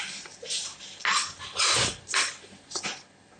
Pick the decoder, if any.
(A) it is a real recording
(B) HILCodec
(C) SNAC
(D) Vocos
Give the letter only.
A